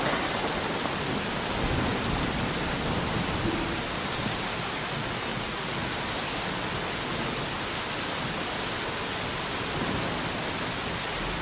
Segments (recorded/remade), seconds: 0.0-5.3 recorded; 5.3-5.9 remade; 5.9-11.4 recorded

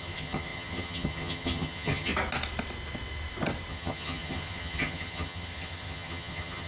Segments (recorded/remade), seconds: 0.0-2.1 remade; 2.1-3.7 recorded; 3.7-6.7 remade

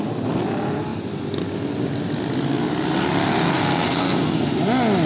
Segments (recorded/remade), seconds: 0.0-3.5 recorded; 3.5-4.0 remade; 4.0-5.1 recorded

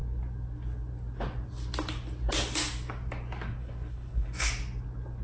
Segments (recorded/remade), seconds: 0.0-3.6 recorded; 3.6-4.5 remade; 4.5-5.2 recorded

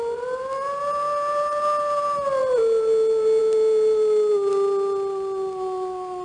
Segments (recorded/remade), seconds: 0.0-6.2 recorded